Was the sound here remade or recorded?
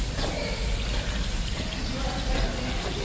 recorded